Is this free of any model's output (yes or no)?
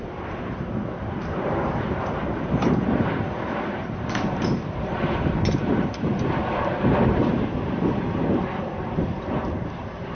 no